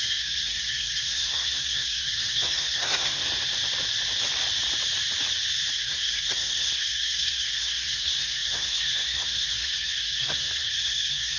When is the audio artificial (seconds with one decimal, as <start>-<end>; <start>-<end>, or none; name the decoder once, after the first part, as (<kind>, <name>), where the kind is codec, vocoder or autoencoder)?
0.0-3.2 (codec, SNAC); 5.7-11.4